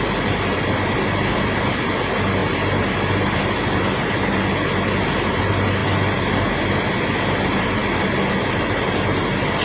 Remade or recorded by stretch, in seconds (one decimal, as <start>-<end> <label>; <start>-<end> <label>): 0.0-9.6 recorded